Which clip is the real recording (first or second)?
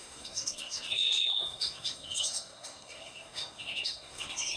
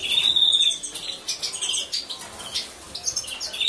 second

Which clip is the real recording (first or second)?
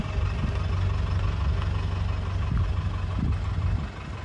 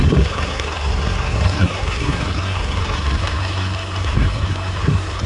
first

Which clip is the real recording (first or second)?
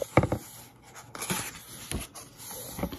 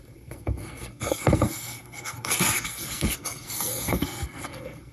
first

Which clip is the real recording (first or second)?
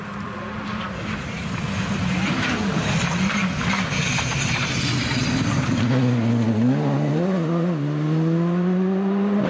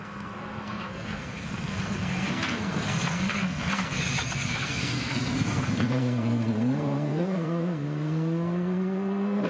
first